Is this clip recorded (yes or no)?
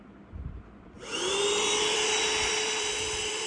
no